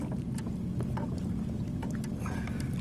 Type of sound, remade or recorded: recorded